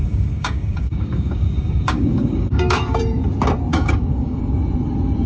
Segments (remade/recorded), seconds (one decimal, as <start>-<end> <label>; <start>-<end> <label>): 0.0-3.2 remade; 3.2-3.7 recorded; 3.7-4.4 remade; 4.4-5.3 recorded